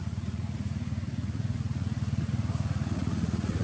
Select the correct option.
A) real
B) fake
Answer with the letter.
B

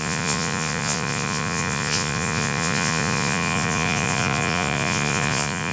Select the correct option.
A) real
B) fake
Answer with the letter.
B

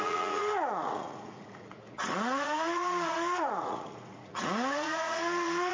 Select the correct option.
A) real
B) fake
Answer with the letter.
B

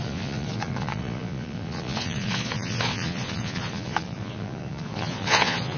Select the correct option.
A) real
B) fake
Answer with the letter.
B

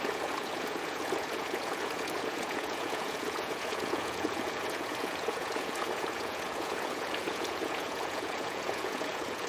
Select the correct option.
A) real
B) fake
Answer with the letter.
B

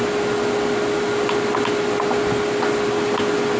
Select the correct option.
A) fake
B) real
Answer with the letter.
B